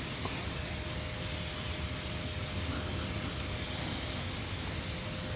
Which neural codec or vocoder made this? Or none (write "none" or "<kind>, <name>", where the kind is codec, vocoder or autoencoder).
none